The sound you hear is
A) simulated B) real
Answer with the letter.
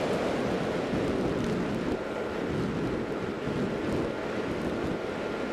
B